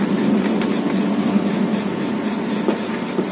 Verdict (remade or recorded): recorded